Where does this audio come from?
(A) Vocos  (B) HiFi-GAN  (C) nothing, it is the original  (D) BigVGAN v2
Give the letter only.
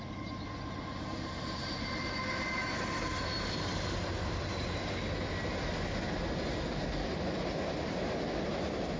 C